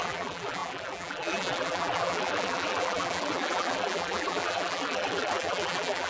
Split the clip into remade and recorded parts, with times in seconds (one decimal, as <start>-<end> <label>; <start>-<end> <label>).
0.0-6.1 remade